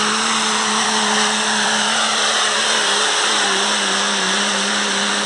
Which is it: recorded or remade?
remade